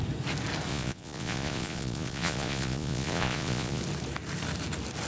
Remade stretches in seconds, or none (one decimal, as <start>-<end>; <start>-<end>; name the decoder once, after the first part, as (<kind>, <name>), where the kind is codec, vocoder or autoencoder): 0.7-3.8 (vocoder, Vocos)